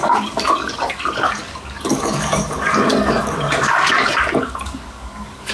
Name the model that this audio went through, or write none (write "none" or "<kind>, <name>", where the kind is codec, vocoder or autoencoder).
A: codec, DAC